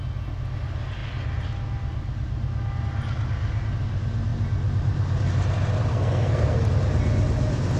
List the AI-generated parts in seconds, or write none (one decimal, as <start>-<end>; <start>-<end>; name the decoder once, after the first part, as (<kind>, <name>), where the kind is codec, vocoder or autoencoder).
5.9-6.7 (codec, SNAC)